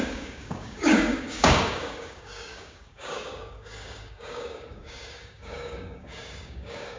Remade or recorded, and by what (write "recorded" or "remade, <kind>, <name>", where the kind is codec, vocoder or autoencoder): remade, codec, DAC